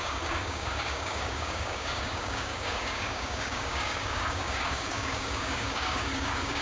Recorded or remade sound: remade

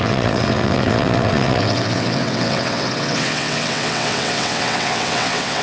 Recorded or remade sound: remade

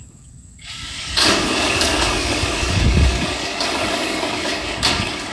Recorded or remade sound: remade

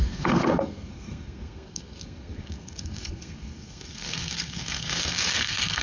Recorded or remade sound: remade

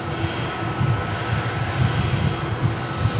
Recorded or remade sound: recorded